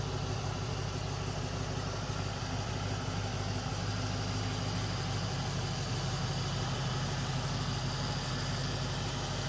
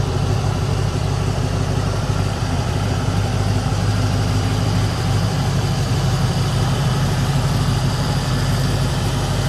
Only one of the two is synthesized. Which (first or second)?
second